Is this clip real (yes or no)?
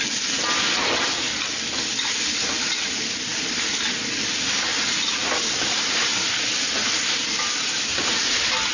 yes